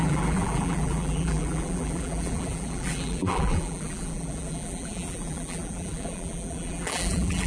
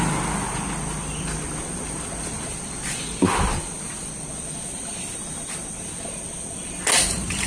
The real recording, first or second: second